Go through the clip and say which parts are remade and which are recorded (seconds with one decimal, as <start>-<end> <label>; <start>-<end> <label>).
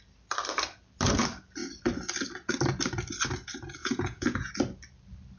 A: 0.0-3.8 recorded; 3.8-4.5 remade; 4.5-5.4 recorded